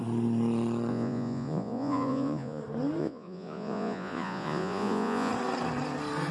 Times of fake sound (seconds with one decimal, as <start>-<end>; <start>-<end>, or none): 0.9-2.6; 3.0-5.3